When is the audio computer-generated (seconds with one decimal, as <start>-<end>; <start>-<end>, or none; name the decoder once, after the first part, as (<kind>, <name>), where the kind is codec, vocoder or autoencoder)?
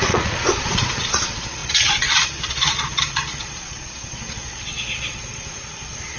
0.0-6.2 (vocoder, Vocos)